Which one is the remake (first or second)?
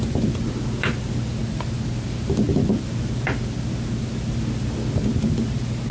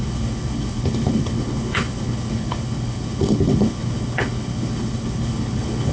second